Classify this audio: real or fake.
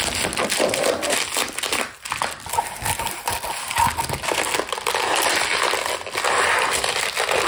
real